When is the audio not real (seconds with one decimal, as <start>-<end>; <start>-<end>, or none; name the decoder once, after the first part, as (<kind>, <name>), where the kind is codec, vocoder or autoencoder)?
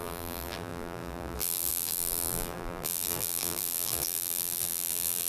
0.0-5.3 (vocoder, BigVGAN v2)